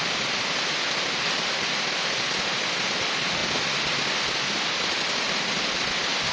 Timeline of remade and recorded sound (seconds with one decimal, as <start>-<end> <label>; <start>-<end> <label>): 0.0-6.3 recorded